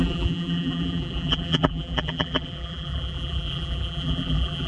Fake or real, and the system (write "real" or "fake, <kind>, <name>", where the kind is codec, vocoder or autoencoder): fake, vocoder, BigVGAN v2